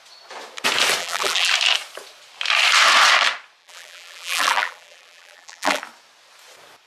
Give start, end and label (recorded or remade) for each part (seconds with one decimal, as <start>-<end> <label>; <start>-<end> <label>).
0.0-1.0 recorded; 1.0-1.5 remade; 1.5-3.6 recorded; 3.6-5.8 remade; 5.8-6.9 recorded

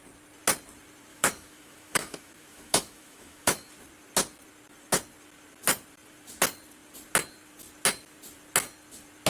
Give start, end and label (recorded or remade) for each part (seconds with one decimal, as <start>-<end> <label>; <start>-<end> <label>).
0.0-1.1 recorded; 1.1-3.7 remade; 3.7-9.3 recorded

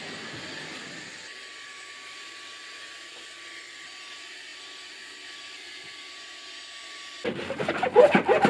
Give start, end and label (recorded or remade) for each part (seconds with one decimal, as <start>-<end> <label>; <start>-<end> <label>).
0.0-4.5 remade; 4.5-5.4 recorded; 5.4-6.3 remade; 6.3-7.4 recorded; 7.4-8.5 remade

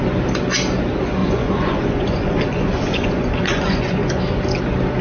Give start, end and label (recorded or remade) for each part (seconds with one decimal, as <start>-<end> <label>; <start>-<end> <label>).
0.0-1.2 recorded; 1.2-4.2 remade; 4.2-5.0 recorded

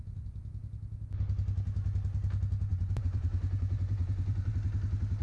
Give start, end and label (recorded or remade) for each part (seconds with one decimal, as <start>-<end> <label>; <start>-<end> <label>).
0.0-2.7 recorded; 2.7-4.5 remade; 4.5-5.2 recorded